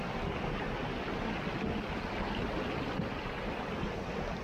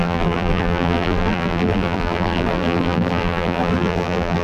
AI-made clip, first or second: second